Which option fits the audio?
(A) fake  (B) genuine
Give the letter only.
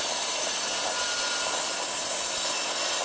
B